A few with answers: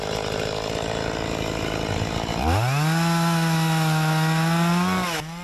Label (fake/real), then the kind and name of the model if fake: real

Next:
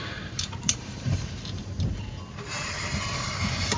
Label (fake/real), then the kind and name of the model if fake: fake, vocoder, BigVGAN v2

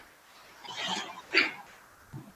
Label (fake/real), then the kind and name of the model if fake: real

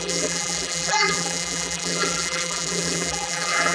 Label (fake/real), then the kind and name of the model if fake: fake, vocoder, BigVGAN v2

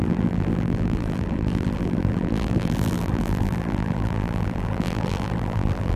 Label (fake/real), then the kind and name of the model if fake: fake, vocoder, BigVGAN v2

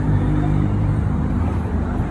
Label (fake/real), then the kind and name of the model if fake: fake, vocoder, BigVGAN v2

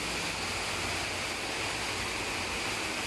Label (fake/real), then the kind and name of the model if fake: real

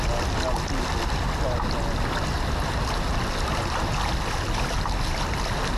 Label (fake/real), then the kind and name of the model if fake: real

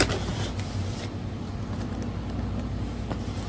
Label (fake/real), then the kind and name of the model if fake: real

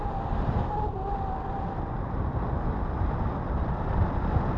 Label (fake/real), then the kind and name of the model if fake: real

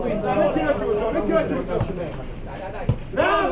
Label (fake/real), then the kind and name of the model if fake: fake, vocoder, BigVGAN v2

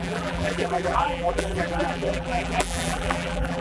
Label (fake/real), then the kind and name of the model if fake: fake, vocoder, BigVGAN v2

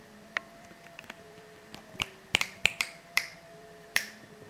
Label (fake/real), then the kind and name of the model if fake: fake, vocoder, BigVGAN v2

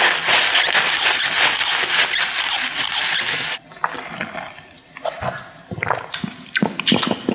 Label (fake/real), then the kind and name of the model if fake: real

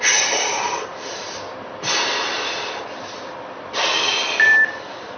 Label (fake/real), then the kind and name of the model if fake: real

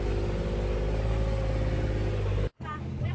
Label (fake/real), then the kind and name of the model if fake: real